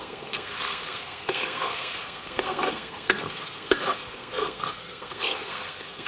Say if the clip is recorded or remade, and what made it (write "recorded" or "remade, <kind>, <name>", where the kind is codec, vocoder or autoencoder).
remade, codec, SNAC